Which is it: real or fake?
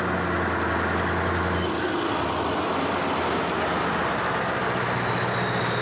real